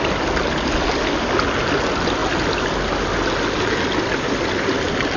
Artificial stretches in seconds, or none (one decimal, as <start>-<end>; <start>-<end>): none